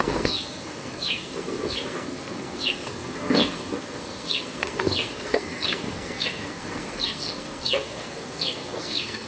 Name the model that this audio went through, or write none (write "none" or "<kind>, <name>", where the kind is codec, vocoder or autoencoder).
codec, SNAC